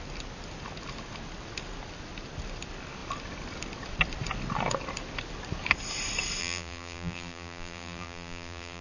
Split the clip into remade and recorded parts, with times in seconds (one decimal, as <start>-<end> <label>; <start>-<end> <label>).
0.0-6.4 recorded; 6.4-8.8 remade